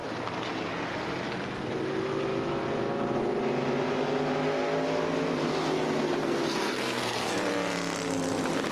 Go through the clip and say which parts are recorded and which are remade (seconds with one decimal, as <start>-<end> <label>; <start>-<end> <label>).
0.0-6.2 recorded; 6.2-7.3 remade; 7.3-8.7 recorded